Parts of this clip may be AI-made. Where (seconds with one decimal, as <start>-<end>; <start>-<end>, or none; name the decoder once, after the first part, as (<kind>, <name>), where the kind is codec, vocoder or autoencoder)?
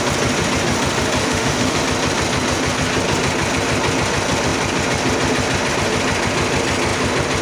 1.2-1.8 (autoencoder, DAC-VAE)